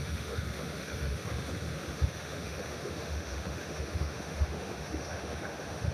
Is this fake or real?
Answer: fake